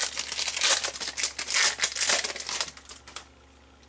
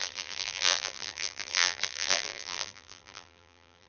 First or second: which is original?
first